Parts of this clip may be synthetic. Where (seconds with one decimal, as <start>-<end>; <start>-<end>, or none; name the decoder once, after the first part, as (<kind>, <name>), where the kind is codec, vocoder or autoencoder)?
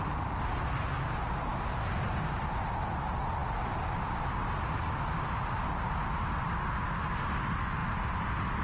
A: none